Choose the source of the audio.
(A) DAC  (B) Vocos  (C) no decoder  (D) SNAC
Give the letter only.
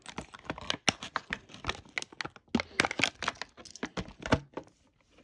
C